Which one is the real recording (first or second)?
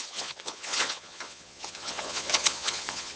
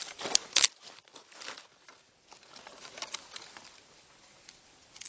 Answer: second